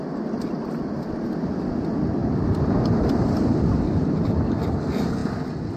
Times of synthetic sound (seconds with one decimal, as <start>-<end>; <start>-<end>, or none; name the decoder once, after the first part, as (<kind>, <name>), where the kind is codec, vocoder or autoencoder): 2.2-4.1 (vocoder, BigVGAN v2)